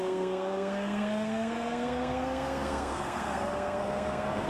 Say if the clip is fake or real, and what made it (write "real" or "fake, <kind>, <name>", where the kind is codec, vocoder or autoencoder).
fake, codec, SNAC